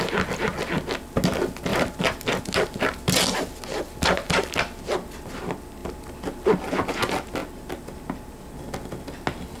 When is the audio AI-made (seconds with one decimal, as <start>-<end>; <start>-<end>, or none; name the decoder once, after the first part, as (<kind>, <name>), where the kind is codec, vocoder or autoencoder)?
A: 1.7-2.4 (vocoder, BigVGAN v2)